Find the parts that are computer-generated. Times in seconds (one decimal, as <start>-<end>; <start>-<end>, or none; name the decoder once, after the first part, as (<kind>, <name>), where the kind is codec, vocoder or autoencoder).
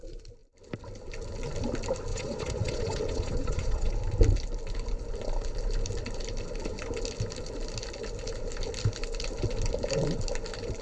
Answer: 2.1-3.9 (vocoder, Vocos)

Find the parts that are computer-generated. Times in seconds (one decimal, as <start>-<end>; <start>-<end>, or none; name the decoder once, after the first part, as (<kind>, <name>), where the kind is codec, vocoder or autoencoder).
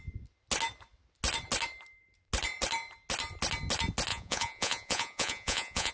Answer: 4.1-5.9 (vocoder, Vocos)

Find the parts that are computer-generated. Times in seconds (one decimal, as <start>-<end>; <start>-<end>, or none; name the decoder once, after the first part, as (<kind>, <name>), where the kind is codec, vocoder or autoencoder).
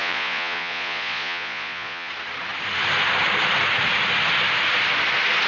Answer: 0.0-2.1 (vocoder, Vocos)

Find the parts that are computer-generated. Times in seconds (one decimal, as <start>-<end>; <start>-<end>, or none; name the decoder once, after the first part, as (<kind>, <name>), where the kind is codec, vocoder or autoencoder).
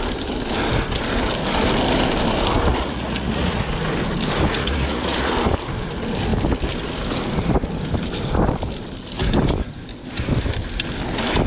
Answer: 2.7-3.7 (vocoder, Vocos); 4.6-5.3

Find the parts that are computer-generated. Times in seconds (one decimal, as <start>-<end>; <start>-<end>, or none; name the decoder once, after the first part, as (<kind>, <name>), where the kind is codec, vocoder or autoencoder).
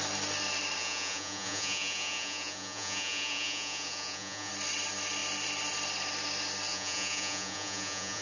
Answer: 0.8-4.5 (vocoder, Vocos); 6.7-8.2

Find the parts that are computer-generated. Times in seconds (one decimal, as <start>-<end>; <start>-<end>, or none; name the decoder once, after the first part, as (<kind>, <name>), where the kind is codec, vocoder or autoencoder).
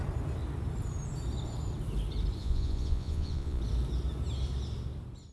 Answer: 2.4-3.6 (vocoder, Vocos)